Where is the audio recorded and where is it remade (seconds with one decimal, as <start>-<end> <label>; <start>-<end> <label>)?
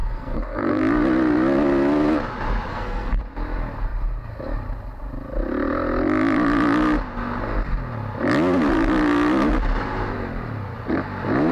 0.0-0.8 remade; 0.8-2.7 recorded; 2.7-3.2 remade; 3.2-11.5 recorded